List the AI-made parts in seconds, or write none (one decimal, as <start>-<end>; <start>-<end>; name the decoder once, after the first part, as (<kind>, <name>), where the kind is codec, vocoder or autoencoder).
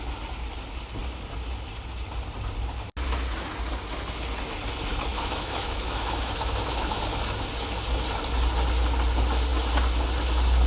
5.1-7.0 (autoencoder, DAC-VAE)